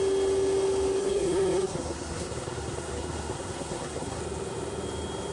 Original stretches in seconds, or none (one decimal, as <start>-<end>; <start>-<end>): 0.0-1.0; 4.2-5.3